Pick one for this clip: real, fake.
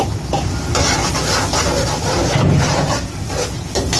real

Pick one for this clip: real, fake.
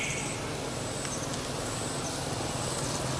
real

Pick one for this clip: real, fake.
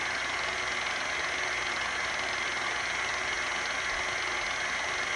real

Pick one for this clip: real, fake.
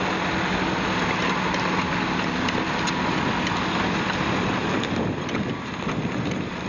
real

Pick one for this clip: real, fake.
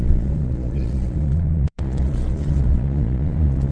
fake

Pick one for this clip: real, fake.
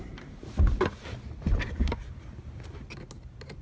real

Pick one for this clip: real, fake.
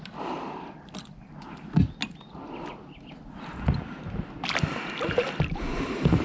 real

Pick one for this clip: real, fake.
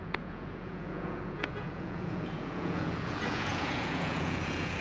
fake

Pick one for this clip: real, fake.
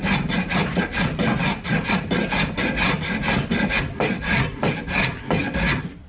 real